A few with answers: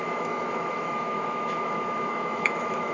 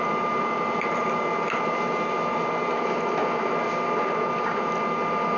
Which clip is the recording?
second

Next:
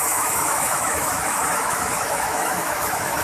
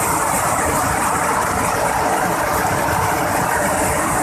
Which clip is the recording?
second